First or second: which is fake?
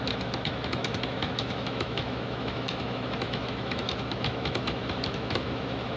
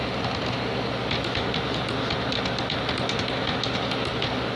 first